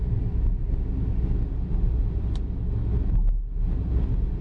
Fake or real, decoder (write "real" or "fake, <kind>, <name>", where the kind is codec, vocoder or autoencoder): real